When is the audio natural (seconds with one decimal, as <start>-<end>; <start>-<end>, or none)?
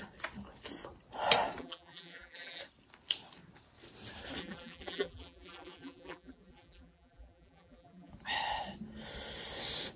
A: 0.0-1.6; 2.6-4.4; 8.1-10.0